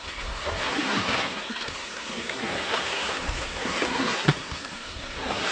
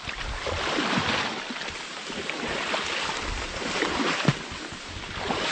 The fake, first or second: first